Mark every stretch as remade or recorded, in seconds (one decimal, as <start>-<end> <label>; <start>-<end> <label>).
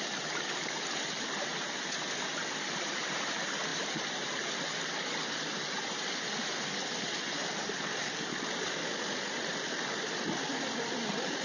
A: 0.0-7.4 recorded; 7.4-10.3 remade; 10.3-11.4 recorded